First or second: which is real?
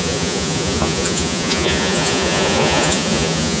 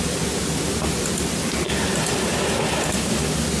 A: second